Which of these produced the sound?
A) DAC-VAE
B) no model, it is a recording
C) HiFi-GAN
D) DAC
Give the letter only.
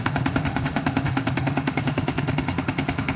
A